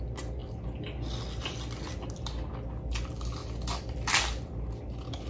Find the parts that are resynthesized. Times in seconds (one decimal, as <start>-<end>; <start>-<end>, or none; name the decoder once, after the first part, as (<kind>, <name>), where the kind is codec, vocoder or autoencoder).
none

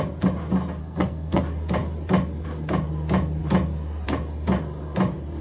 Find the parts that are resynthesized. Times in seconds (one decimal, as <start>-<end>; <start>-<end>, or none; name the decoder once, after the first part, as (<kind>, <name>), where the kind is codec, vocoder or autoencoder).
0.8-1.4 (codec, SNAC)

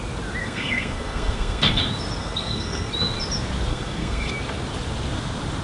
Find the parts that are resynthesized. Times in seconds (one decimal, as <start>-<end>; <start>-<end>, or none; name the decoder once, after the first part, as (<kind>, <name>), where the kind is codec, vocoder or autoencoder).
0.4-1.8 (codec, SNAC); 2.2-2.9; 3.7-4.3